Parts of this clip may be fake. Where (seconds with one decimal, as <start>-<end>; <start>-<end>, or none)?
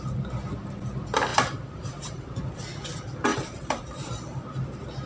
1.3-2.5; 3.3-4.1